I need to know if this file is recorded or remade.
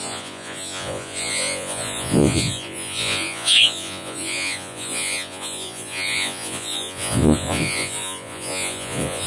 remade